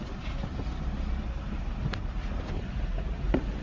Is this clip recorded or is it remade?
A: recorded